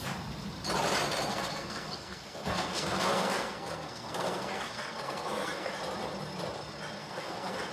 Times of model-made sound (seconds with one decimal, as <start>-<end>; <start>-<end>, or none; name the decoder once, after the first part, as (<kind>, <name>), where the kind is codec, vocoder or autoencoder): 1.3-5.7 (codec, SNAC); 7.0-7.7